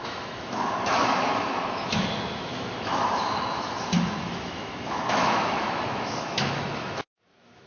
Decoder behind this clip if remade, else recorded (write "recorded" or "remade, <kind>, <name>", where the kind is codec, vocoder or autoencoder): remade, autoencoder, DAC-VAE